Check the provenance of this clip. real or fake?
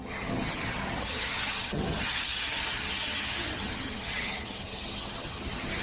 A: fake